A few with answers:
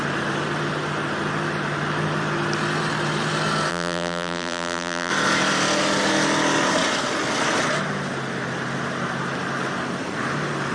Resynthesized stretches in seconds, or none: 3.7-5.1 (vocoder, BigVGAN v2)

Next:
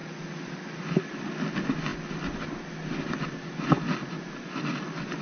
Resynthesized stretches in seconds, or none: none

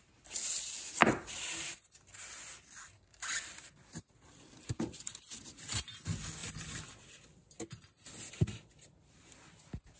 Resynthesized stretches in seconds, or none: 1.0-5.0 (vocoder, BigVGAN v2)